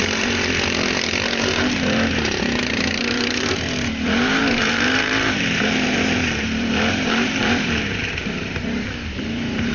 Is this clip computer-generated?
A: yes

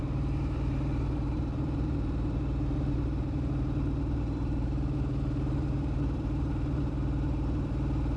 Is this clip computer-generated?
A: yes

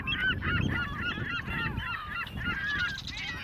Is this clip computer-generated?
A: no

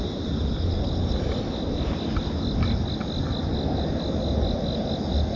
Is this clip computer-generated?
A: no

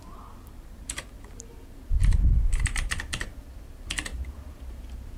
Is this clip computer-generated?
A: yes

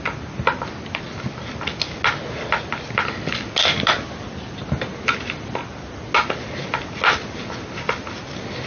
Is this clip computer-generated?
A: no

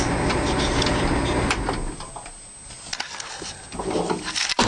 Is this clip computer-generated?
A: no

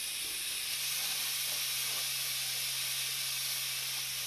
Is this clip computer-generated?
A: no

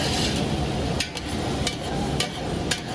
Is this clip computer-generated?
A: no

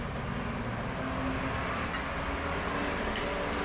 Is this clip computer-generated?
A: no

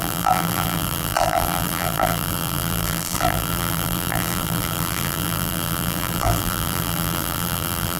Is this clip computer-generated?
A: yes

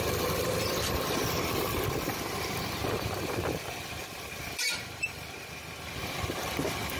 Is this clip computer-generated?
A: yes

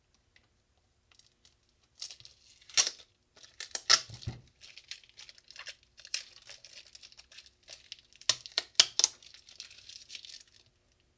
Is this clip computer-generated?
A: no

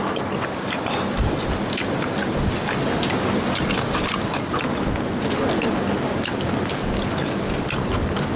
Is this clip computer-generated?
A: no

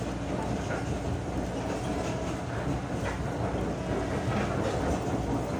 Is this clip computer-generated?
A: no